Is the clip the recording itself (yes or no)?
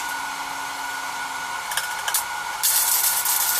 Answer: yes